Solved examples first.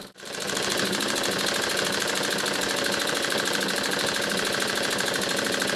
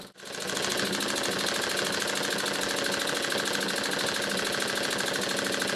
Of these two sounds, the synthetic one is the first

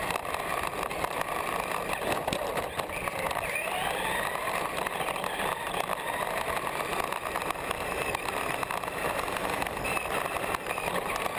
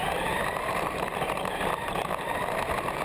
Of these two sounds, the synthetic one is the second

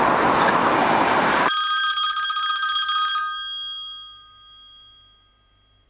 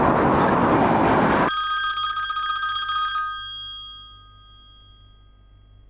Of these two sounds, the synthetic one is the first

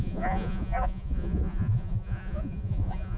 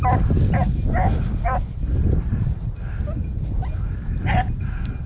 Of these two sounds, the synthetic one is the first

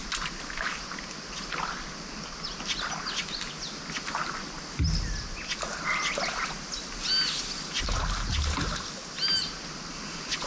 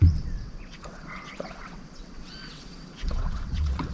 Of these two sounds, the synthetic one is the second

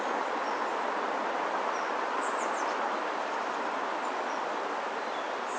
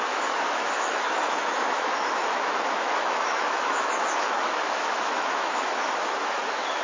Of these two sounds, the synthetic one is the second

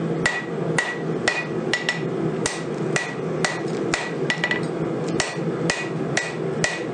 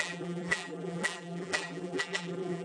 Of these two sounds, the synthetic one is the second